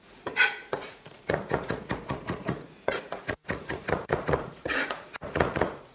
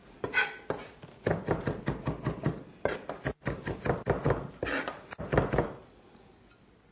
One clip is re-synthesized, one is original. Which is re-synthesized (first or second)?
first